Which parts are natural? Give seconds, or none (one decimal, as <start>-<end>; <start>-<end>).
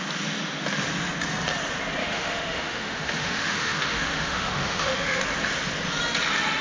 0.0-2.0; 5.2-6.6